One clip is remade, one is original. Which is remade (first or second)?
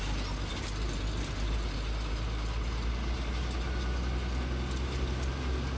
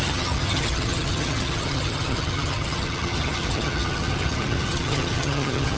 second